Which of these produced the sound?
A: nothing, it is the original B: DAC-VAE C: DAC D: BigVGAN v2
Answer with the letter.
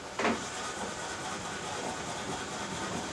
A